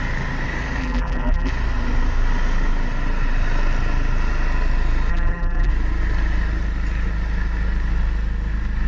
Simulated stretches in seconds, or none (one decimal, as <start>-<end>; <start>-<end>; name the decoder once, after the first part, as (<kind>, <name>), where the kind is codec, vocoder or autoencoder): 0.8-1.5 (vocoder, BigVGAN v2); 5.1-5.7